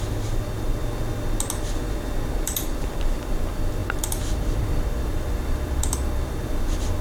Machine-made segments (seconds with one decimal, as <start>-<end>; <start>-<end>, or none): 0.0-0.8; 2.3-7.0